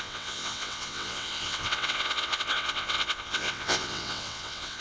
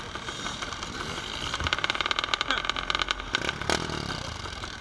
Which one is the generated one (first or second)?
first